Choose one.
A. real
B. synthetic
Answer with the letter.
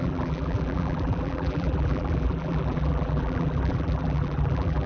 B